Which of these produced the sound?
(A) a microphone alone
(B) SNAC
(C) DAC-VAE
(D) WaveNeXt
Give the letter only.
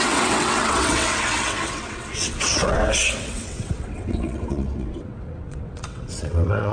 D